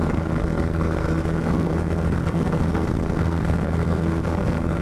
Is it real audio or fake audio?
fake